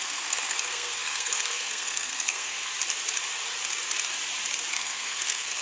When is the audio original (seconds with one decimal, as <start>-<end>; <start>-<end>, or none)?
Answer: 2.7-4.7